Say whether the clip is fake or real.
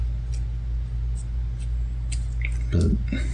real